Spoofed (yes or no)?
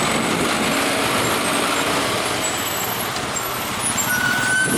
no